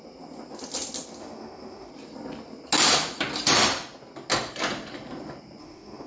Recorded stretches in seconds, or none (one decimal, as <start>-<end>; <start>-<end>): 0.0-1.2; 1.9-5.6